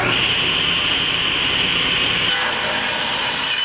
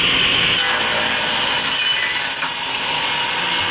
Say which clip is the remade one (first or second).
first